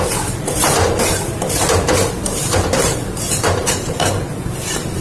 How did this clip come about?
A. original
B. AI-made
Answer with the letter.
B